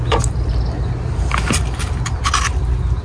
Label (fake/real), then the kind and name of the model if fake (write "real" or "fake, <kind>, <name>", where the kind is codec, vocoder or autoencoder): real